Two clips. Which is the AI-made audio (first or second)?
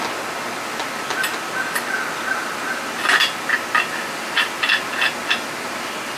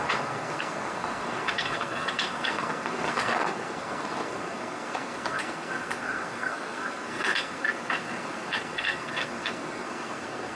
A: second